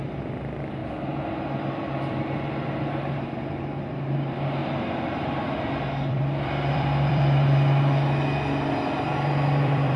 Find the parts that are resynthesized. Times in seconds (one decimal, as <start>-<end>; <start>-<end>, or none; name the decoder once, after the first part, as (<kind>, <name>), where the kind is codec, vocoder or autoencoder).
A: 0.0-10.0 (vocoder, BigVGAN v2)